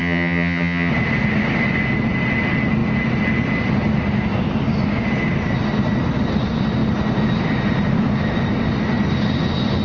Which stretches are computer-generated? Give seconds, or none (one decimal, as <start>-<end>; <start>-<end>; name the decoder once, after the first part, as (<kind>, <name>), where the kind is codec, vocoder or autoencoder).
0.0-0.9 (vocoder, HiFi-GAN)